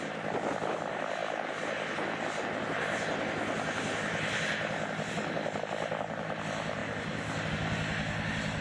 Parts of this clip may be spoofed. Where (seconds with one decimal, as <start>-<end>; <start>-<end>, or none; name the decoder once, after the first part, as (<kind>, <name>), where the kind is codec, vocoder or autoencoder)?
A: none